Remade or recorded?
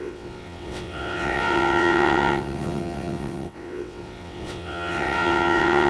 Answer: remade